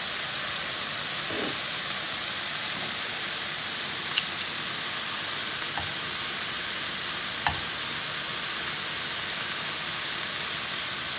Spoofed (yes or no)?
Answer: no